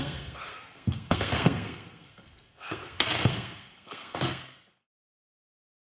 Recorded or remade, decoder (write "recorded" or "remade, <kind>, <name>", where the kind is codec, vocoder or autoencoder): remade, codec, SNAC